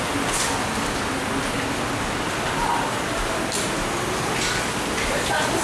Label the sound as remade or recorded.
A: recorded